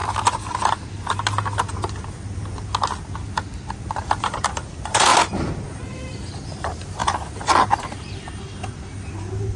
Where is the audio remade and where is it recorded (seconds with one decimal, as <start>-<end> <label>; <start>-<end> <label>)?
0.0-3.7 recorded; 3.7-9.6 remade